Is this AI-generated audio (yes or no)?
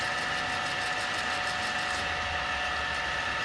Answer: no